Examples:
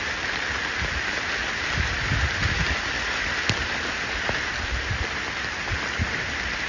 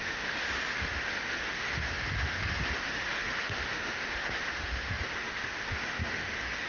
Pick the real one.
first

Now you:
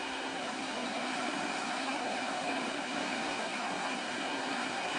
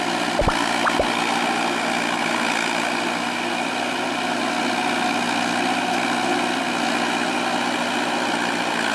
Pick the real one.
second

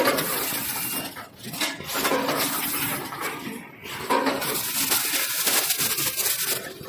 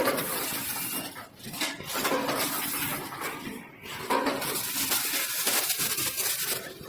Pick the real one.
first